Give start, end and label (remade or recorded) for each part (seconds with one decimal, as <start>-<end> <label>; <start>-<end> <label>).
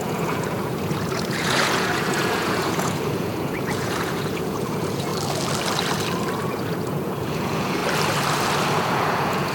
0.0-5.1 remade; 5.1-6.4 recorded; 6.4-7.8 remade; 7.8-8.7 recorded; 8.7-9.5 remade